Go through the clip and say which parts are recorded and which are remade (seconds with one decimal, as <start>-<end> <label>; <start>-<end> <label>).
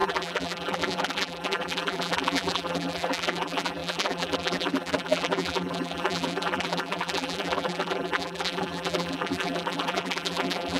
0.0-10.8 remade